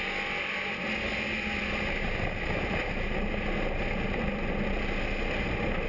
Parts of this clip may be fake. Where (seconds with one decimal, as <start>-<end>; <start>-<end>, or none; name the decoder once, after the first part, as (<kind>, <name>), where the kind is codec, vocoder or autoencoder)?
none